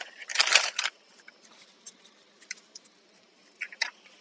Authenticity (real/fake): real